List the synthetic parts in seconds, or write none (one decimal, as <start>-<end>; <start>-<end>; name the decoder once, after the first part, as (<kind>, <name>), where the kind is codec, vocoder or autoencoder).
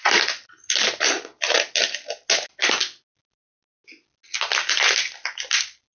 none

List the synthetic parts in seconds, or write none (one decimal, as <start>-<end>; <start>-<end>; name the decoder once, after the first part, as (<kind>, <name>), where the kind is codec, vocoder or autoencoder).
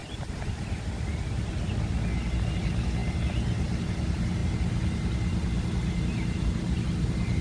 none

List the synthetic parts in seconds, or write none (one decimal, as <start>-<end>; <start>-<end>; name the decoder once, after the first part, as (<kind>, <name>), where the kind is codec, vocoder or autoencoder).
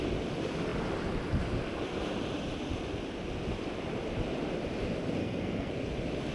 5.2-5.7 (codec, SNAC)